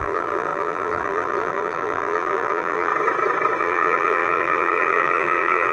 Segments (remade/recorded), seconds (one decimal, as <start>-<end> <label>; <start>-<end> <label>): 0.0-2.9 remade; 2.9-3.6 recorded; 3.6-5.7 remade